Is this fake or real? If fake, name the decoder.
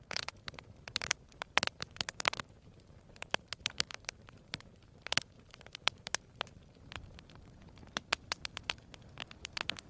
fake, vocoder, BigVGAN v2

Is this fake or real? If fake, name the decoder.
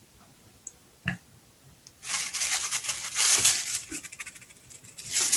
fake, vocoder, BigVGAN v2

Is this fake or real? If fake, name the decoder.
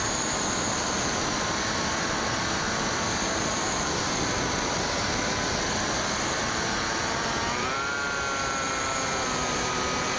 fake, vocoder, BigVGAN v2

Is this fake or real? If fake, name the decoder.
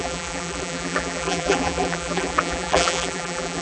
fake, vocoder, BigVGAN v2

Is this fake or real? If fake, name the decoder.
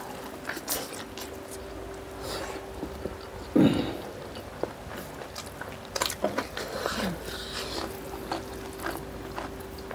real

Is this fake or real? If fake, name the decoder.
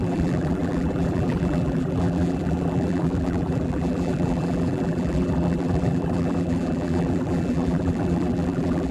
fake, vocoder, BigVGAN v2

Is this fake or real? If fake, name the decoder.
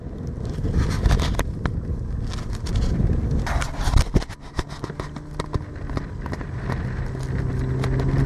real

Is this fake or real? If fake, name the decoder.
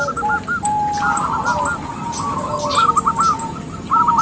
fake, vocoder, BigVGAN v2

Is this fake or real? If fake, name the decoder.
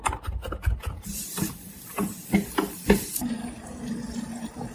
real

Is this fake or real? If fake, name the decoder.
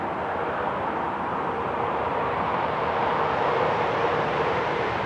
fake, vocoder, BigVGAN v2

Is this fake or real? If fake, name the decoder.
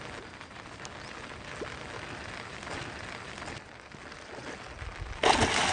real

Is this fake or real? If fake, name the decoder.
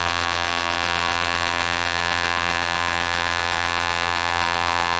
fake, vocoder, BigVGAN v2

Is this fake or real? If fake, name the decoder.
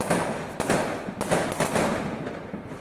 fake, vocoder, BigVGAN v2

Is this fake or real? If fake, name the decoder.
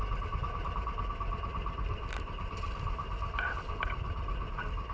real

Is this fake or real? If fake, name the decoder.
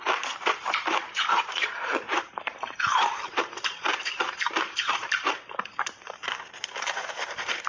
fake, vocoder, BigVGAN v2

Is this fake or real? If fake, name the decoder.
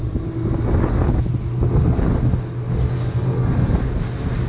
real